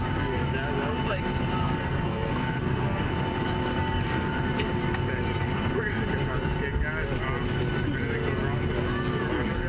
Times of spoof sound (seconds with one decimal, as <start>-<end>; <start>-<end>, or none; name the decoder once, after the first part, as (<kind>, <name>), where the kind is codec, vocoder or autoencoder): 1.6-3.1 (codec, SNAC); 3.8-4.3